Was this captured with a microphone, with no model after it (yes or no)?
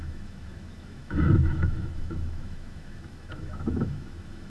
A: no